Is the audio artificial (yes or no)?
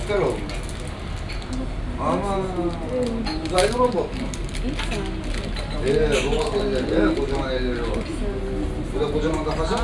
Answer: no